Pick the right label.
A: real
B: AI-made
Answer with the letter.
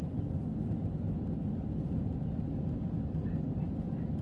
A